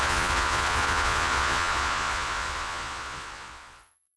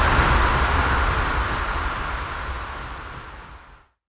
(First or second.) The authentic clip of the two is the second